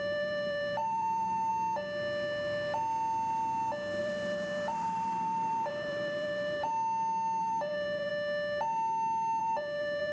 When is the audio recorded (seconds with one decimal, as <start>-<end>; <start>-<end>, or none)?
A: 1.5-4.0; 6.7-7.4; 8.1-9.4